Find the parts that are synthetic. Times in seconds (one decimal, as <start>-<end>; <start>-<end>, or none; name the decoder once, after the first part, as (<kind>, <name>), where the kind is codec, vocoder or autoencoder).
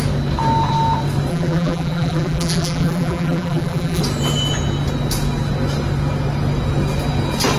1.3-4.0 (vocoder, BigVGAN v2)